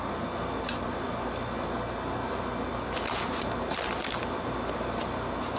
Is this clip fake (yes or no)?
no